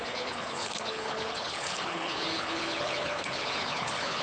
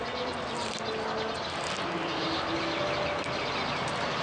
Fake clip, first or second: first